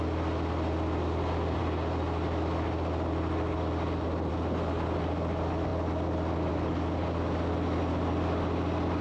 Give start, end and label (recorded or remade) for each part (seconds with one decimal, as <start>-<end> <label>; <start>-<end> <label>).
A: 0.0-9.0 recorded